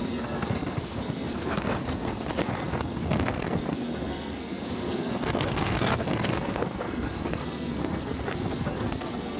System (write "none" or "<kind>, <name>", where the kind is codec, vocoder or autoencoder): codec, SNAC